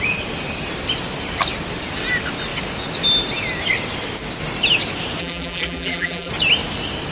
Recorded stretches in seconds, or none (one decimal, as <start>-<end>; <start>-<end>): 0.0-5.2; 6.3-7.1